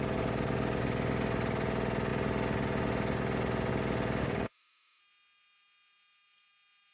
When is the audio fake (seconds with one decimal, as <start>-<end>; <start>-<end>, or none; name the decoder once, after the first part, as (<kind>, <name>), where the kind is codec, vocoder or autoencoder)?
4.2-5.0 (autoencoder, DAC-VAE)